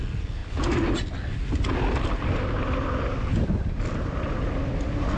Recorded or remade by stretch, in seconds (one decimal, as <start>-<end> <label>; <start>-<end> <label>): 0.0-5.2 recorded